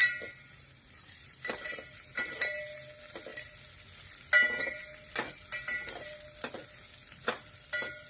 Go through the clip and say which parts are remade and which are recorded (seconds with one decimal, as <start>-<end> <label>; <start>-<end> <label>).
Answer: 0.0-1.9 remade; 1.9-8.1 recorded